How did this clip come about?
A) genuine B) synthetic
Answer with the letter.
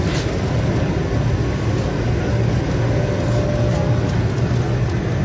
A